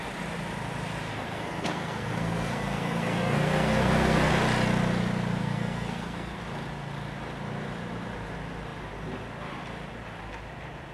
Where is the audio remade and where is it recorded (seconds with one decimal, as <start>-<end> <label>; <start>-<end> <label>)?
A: 0.0-1.1 recorded; 1.1-4.3 remade; 4.3-5.4 recorded; 5.4-6.4 remade; 6.4-10.9 recorded